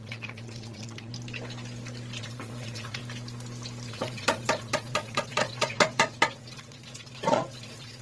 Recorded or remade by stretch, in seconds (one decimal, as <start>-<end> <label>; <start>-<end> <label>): 0.0-1.1 remade; 1.1-2.2 recorded; 2.2-3.0 remade; 3.0-3.9 recorded; 3.9-8.0 remade